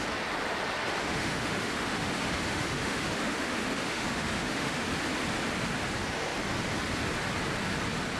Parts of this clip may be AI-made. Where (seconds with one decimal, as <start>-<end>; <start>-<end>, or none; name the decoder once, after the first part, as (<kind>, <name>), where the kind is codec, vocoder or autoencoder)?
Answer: 1.0-4.8 (autoencoder, DAC-VAE)